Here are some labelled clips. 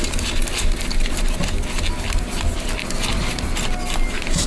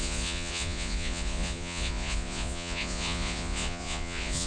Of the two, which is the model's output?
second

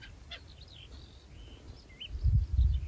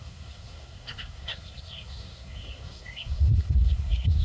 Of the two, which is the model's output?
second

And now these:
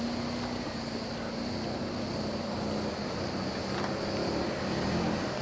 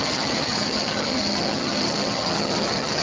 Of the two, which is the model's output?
second